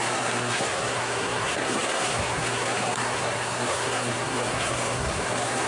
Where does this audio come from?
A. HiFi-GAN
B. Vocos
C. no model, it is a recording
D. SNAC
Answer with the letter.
D